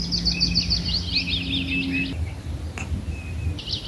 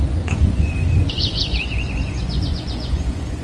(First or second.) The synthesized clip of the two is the second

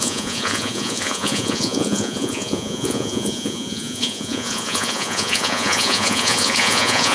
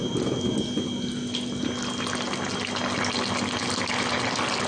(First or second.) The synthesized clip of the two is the first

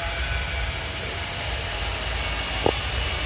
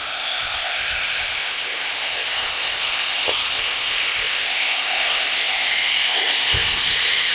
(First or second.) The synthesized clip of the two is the second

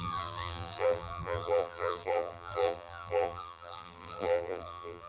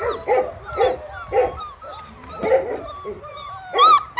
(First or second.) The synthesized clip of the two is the first